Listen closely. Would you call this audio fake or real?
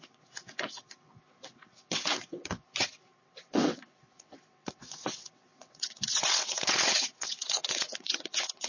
fake